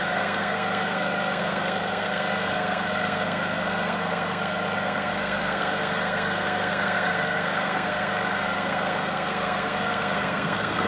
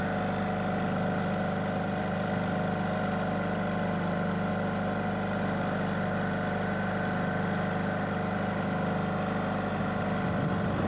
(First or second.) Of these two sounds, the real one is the second